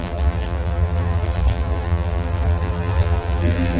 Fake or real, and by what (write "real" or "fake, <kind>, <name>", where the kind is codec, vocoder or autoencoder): fake, vocoder, BigVGAN v2